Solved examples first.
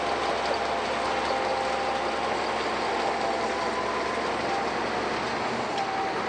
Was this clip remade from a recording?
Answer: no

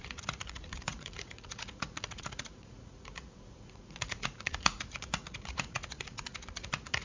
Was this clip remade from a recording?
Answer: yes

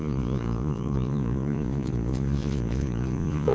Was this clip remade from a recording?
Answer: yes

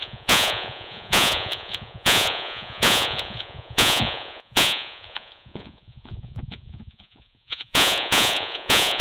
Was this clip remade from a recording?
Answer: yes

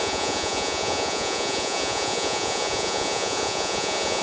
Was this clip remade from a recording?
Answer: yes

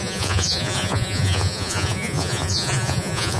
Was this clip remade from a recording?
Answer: yes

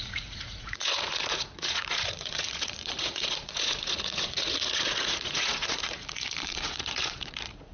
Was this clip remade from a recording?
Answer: yes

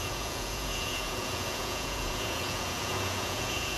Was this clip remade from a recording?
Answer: yes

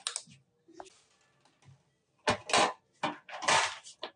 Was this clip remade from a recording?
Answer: no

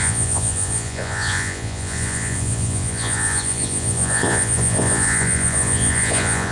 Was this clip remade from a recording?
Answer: yes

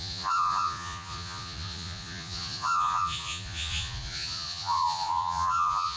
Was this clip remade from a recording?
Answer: yes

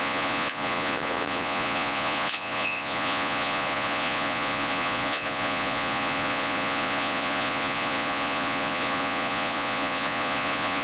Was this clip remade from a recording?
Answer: yes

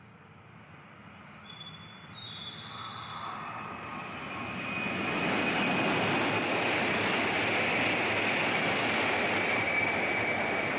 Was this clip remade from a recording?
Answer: no